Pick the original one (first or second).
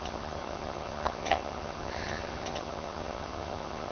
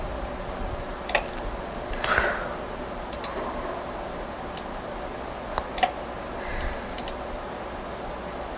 second